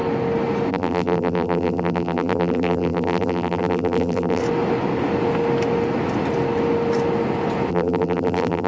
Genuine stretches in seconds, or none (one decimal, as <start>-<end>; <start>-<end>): 0.0-0.7; 4.4-7.7